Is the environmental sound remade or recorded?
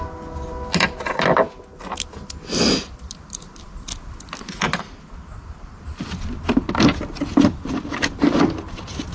recorded